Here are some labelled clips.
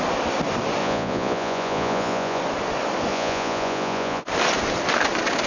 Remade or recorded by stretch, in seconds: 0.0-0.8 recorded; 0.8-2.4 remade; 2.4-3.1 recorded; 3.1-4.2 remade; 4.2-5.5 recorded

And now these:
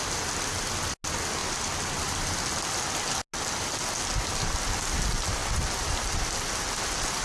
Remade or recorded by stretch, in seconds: 0.0-7.2 recorded

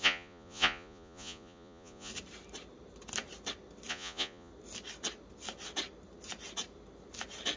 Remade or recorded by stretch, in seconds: 0.0-2.1 remade; 2.1-3.9 recorded; 3.9-4.5 remade; 4.5-7.6 recorded

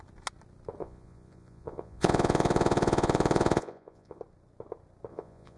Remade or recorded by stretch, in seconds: 0.0-0.8 recorded; 0.8-4.2 remade; 4.2-5.1 recorded; 5.1-5.6 remade